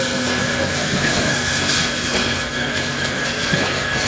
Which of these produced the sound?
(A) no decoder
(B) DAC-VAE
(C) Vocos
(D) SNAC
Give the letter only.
D